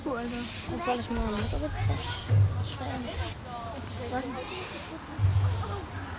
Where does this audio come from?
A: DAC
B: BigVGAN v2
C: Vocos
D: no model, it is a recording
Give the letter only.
D